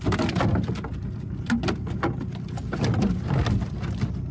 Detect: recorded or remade recorded